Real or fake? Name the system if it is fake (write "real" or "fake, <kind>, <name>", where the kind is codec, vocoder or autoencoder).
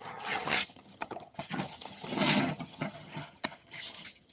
fake, vocoder, HiFi-GAN